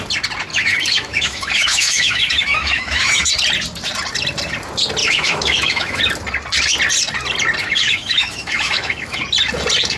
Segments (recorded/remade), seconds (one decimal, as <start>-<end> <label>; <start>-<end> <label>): 0.0-0.5 recorded; 0.5-3.3 remade; 3.3-5.0 recorded; 5.0-6.0 remade; 6.0-7.6 recorded; 7.6-9.2 remade; 9.2-10.0 recorded